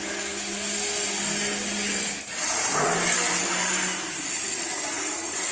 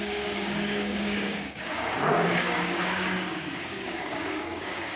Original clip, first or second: first